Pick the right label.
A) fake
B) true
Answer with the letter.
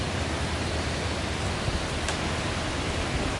B